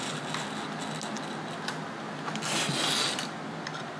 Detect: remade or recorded recorded